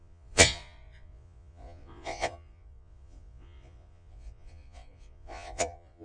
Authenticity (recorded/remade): remade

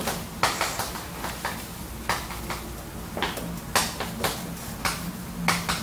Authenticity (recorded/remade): recorded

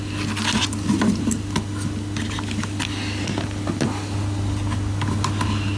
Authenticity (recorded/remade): recorded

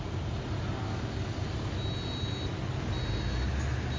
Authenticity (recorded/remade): recorded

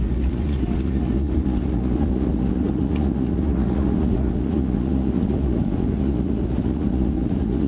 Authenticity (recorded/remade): remade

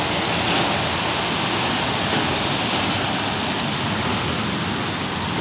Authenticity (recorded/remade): recorded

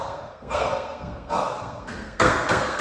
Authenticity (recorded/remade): remade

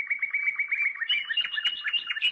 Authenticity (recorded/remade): recorded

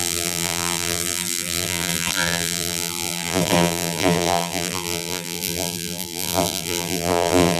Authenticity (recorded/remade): remade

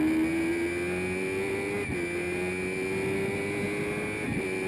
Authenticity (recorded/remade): recorded